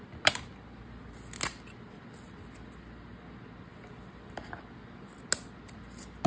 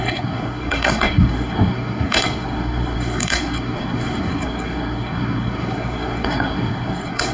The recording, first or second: first